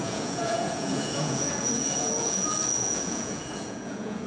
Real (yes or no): no